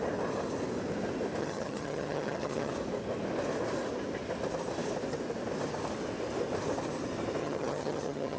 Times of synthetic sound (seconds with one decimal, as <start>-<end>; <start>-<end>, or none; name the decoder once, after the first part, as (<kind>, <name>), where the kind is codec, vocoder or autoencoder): 1.4-2.7 (vocoder, HiFi-GAN); 7.4-8.4